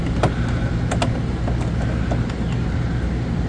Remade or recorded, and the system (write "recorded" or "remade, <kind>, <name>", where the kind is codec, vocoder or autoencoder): recorded